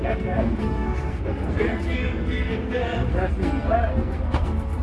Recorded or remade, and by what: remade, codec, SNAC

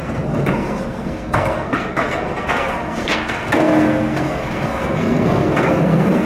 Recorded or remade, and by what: remade, codec, SNAC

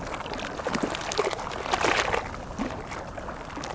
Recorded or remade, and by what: recorded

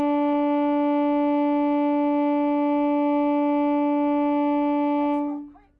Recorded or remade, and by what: recorded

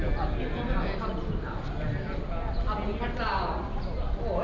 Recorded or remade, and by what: recorded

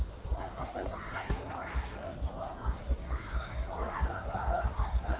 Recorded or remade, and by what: remade, codec, SNAC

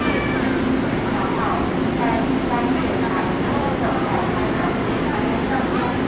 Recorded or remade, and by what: recorded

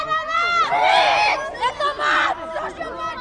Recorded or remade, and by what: recorded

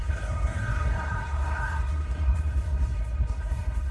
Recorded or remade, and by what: remade, codec, SNAC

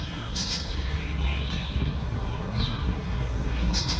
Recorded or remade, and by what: remade, codec, SNAC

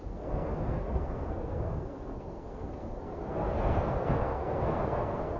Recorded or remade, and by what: remade, codec, SNAC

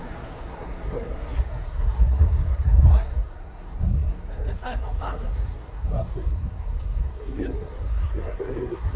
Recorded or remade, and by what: remade, codec, SNAC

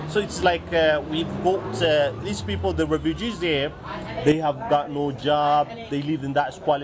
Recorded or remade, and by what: recorded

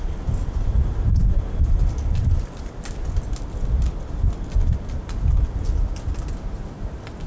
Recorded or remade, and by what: recorded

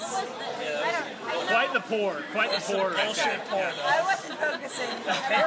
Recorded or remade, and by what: recorded